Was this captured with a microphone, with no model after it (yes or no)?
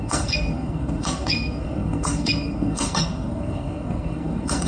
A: no